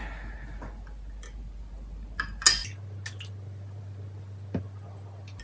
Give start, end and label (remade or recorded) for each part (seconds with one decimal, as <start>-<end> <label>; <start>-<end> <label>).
0.0-5.4 recorded